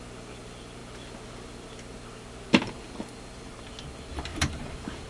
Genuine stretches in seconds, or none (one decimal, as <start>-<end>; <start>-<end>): 0.0-4.3